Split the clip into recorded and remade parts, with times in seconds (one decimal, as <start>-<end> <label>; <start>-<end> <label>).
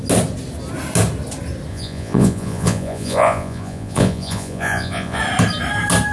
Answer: 0.0-1.7 recorded; 1.7-5.2 remade; 5.2-6.1 recorded